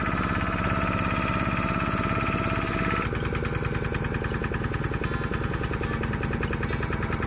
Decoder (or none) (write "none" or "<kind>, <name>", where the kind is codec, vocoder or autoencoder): none